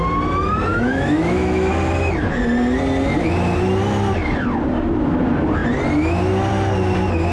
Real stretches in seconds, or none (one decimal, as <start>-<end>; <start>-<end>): 0.0-0.7; 1.7-7.3